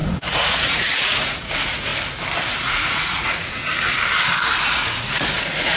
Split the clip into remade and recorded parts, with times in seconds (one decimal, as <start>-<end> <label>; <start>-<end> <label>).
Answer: 0.0-1.9 remade; 1.9-2.6 recorded; 2.6-3.6 remade; 3.6-4.7 recorded; 4.7-5.8 remade